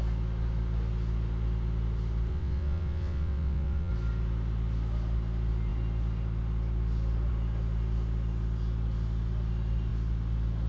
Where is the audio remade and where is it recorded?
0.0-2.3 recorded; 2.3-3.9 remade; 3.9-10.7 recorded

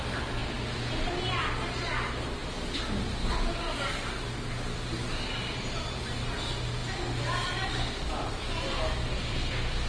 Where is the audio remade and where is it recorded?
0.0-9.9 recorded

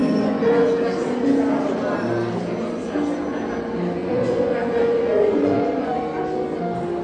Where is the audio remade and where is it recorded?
0.0-0.7 remade; 0.7-4.0 recorded; 4.0-6.0 remade; 6.0-7.0 recorded

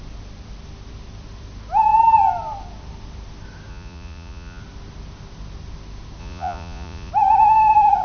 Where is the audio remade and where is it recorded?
0.0-3.7 recorded; 3.7-4.6 remade; 4.6-6.2 recorded; 6.2-7.1 remade; 7.1-8.0 recorded